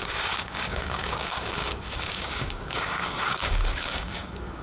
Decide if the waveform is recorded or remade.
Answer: remade